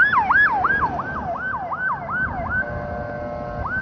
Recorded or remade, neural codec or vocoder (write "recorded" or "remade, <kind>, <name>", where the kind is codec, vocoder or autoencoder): recorded